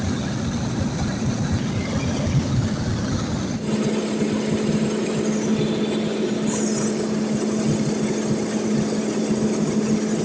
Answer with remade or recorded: recorded